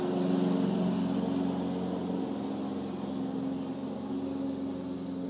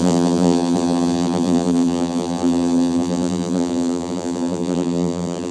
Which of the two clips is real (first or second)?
first